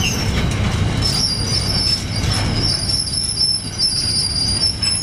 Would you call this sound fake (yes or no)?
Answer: no